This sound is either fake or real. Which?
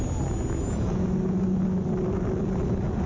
real